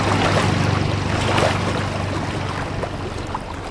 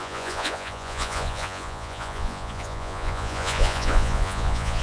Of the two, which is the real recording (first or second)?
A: first